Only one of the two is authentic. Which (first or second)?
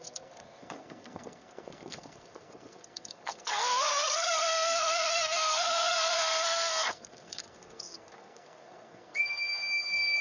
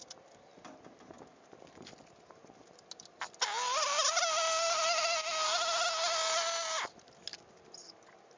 second